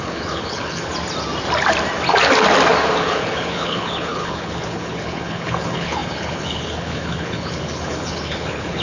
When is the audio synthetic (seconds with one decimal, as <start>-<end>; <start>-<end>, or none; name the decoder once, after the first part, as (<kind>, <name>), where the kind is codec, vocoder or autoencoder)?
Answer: 0.0-0.9 (codec, HILCodec); 3.0-8.8

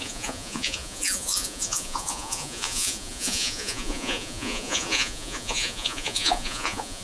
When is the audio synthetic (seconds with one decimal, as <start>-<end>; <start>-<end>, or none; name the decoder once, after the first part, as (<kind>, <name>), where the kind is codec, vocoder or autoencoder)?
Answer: 0.0-7.0 (vocoder, Vocos)